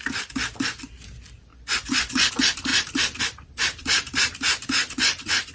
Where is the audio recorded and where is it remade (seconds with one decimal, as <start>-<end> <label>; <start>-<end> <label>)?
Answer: 0.0-1.5 recorded; 1.5-2.3 remade; 2.3-4.8 recorded; 4.8-5.5 remade